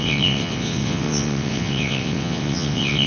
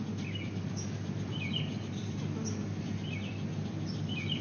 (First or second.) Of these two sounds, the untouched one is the second